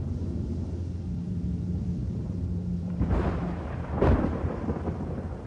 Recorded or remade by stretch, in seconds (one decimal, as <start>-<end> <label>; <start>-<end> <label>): 0.0-2.0 recorded; 2.0-4.5 remade; 4.5-5.5 recorded